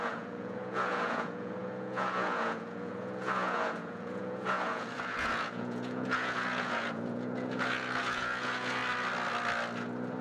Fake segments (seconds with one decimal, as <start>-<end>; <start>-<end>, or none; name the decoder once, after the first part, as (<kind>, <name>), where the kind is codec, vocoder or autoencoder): 0.0-8.8 (vocoder, Vocos)